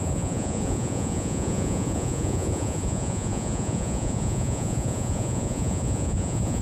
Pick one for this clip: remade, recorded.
remade